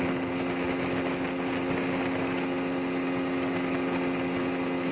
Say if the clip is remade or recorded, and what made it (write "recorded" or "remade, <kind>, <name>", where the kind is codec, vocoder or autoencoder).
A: recorded